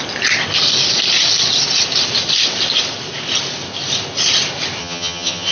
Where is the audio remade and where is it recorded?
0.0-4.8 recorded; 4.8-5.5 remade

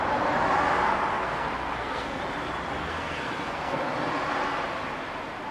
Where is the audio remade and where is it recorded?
0.0-1.1 recorded; 1.1-2.2 remade; 2.2-2.8 recorded; 2.8-3.8 remade; 3.8-5.5 recorded

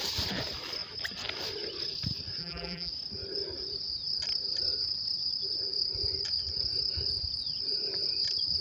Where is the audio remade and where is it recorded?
0.0-2.4 recorded; 2.4-2.9 remade; 2.9-8.6 recorded

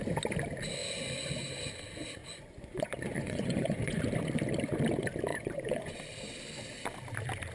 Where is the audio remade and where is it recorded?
0.0-2.2 recorded; 2.2-4.0 remade; 4.0-5.3 recorded; 5.3-6.0 remade; 6.0-7.5 recorded

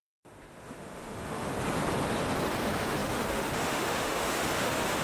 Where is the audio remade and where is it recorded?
0.0-1.5 remade; 1.5-2.6 recorded; 2.6-5.0 remade

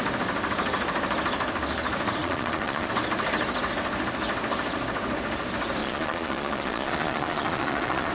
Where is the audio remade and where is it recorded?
0.0-2.2 recorded; 2.2-2.9 remade; 2.9-5.8 recorded; 5.8-8.1 remade

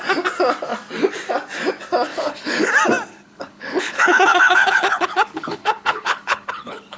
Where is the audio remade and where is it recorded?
0.0-2.1 recorded; 2.1-2.7 remade; 2.7-3.1 recorded; 3.1-7.0 remade

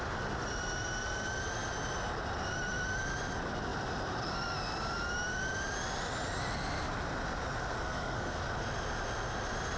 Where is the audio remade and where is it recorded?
0.0-7.7 recorded; 7.7-8.4 remade; 8.4-9.8 recorded